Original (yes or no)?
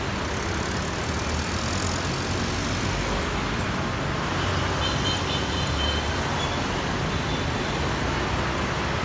yes